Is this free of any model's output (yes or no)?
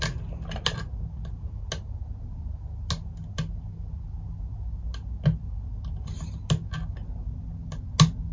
yes